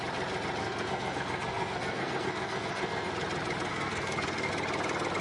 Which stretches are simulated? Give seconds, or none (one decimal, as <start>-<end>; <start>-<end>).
0.6-3.1; 3.7-4.5